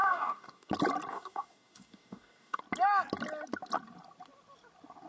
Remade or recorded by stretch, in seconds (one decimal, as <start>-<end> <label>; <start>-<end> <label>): 0.0-0.7 remade; 0.7-1.1 recorded; 1.1-2.6 remade; 2.6-5.1 recorded